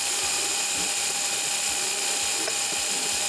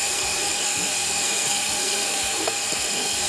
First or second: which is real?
first